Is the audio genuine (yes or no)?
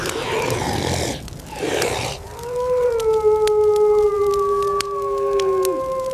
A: yes